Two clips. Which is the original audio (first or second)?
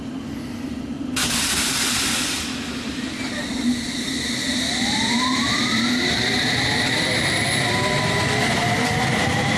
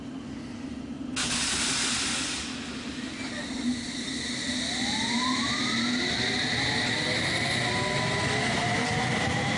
second